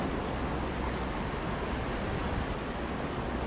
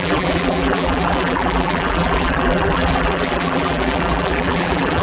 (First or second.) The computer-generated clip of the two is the second